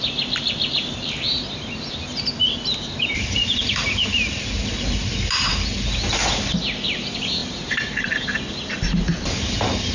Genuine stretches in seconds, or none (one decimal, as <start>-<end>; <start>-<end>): 0.0-2.4; 3.1-7.4; 8.5-9.9